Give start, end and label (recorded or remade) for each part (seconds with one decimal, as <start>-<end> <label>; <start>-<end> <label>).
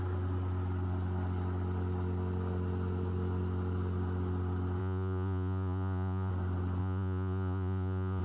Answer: 0.0-4.8 recorded; 4.8-6.3 remade; 6.3-6.8 recorded; 6.8-8.2 remade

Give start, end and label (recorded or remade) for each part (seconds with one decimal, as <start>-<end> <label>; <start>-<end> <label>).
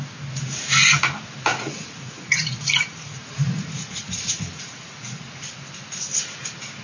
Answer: 0.0-1.5 recorded; 1.5-5.4 remade; 5.4-6.8 recorded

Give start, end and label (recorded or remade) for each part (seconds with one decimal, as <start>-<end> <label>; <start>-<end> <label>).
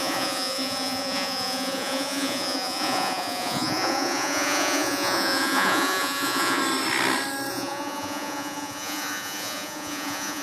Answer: 0.0-6.6 remade; 6.6-7.5 recorded; 7.5-10.4 remade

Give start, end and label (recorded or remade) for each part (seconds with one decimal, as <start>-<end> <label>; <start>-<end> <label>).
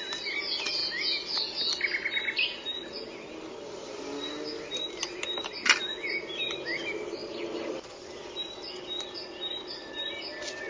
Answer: 0.0-10.7 recorded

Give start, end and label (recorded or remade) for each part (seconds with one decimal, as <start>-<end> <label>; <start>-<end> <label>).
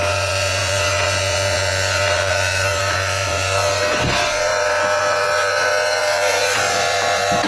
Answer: 0.0-7.5 remade